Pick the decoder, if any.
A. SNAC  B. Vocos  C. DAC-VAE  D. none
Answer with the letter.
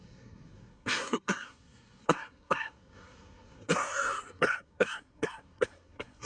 A